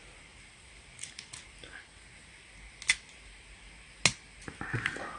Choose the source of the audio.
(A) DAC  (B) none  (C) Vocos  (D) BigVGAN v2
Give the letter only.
B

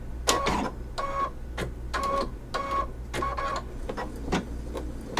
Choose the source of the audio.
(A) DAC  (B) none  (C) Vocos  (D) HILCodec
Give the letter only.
B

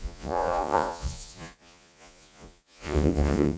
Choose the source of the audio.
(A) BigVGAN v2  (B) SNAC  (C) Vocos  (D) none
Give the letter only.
C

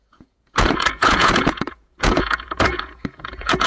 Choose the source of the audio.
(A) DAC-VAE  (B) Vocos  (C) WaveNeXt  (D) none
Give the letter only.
B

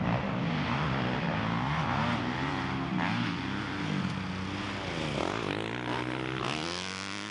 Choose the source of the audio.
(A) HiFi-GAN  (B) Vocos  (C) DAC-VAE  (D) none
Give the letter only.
D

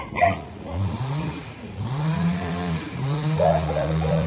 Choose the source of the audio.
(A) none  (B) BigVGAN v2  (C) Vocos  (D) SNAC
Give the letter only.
C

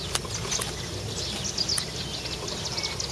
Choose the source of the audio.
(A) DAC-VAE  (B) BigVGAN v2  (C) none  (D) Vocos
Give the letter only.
C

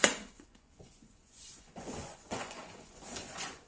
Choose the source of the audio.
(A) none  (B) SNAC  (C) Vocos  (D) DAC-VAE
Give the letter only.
C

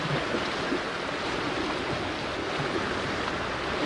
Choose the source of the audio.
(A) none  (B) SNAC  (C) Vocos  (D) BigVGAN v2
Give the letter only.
A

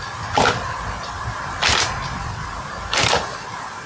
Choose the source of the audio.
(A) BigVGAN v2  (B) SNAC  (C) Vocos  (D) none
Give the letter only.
D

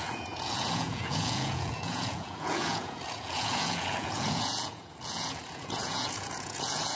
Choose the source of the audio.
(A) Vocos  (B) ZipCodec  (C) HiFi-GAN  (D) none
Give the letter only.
A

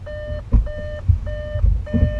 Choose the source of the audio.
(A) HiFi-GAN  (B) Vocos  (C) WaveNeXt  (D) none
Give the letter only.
D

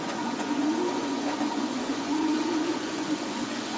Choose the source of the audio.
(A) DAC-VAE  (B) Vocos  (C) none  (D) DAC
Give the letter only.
B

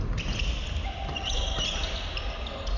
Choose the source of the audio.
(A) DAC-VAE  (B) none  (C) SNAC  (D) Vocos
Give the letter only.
B